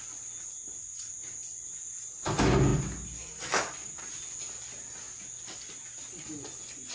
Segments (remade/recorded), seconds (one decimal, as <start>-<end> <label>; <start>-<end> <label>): 0.0-6.9 recorded